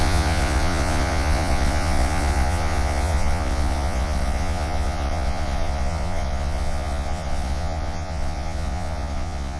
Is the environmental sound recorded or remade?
remade